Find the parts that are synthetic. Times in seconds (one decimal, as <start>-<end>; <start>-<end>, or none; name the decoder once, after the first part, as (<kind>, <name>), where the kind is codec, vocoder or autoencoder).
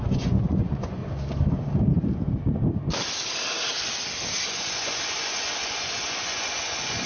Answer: 0.0-1.0 (vocoder, Vocos); 4.5-7.1